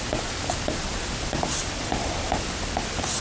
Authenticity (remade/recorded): remade